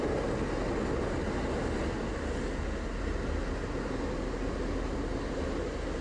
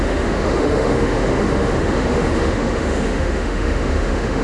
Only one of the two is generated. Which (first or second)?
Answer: second